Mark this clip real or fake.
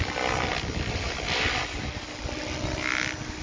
real